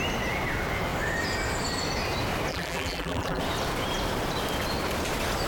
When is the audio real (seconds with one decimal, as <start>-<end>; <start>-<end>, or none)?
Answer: 0.0-2.5; 3.4-5.5